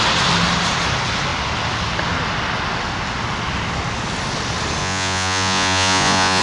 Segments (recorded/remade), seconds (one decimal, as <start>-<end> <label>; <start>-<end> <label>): 0.0-4.8 recorded; 4.8-6.4 remade